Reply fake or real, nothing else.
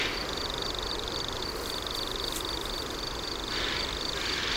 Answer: real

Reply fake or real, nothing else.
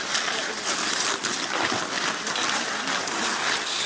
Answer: real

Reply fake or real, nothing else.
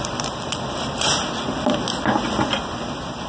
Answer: real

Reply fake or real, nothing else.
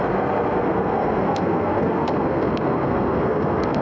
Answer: fake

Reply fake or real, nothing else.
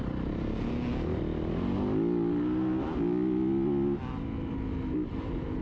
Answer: real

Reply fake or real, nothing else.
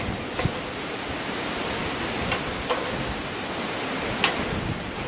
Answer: real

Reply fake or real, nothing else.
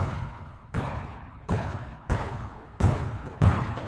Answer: fake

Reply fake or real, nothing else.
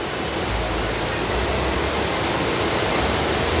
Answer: real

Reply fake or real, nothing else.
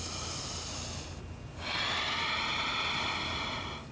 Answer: real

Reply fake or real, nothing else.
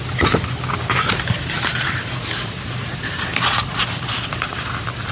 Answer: real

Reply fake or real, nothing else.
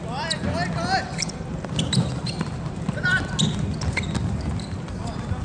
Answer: real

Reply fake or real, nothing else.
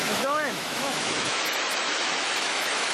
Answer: fake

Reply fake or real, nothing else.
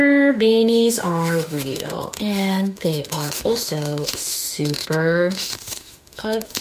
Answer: fake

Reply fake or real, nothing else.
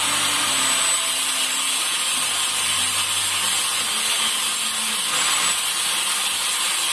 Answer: real